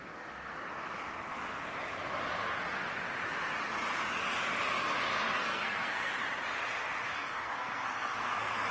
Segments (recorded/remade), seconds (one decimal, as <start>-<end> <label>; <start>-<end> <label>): 0.0-0.6 remade; 0.6-5.4 recorded; 5.4-6.1 remade; 6.1-7.1 recorded; 7.1-8.7 remade